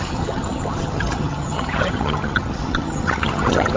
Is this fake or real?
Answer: fake